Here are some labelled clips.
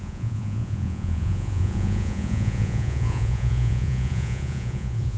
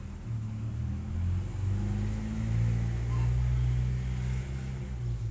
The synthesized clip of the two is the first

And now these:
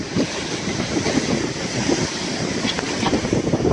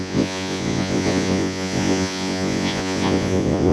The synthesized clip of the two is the second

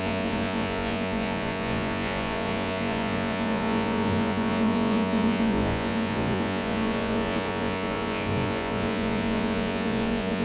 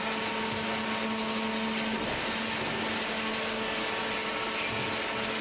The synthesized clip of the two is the first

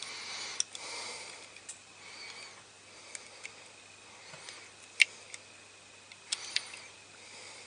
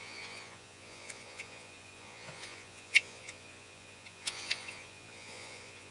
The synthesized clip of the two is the second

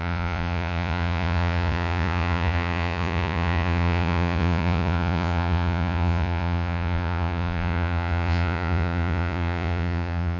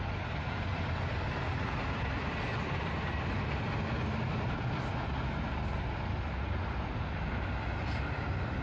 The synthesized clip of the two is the first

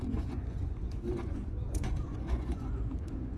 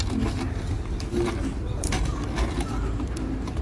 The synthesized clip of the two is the first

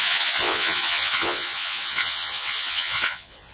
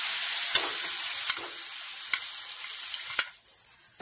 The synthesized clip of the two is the first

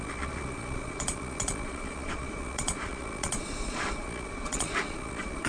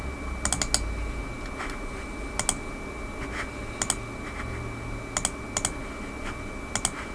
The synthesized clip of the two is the first